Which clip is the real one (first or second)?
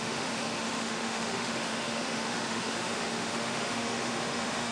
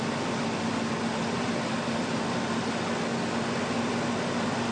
second